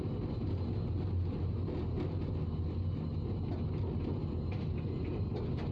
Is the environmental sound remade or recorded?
recorded